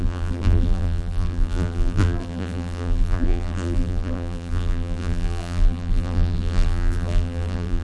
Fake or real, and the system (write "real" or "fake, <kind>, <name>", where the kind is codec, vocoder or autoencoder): fake, vocoder, BigVGAN v2